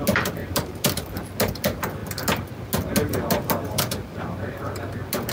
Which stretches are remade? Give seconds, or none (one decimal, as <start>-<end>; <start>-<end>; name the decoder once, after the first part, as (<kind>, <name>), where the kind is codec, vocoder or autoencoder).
0.4-1.1 (vocoder, BigVGAN v2)